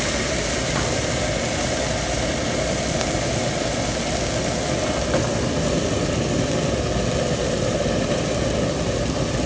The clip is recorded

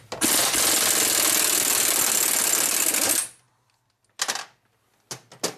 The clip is recorded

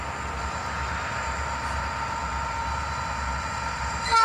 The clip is remade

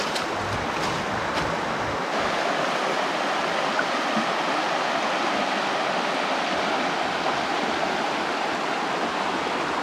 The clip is recorded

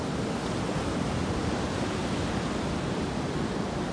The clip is recorded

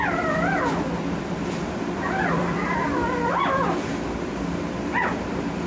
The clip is remade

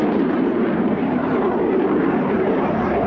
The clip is remade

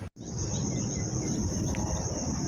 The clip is recorded